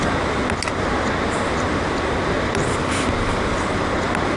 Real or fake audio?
real